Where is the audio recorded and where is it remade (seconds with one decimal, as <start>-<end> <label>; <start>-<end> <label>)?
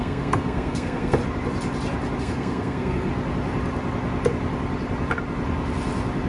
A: 0.0-1.2 remade; 1.2-2.2 recorded; 2.2-3.1 remade; 3.1-6.3 recorded